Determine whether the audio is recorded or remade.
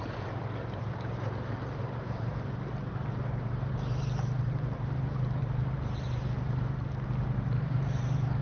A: remade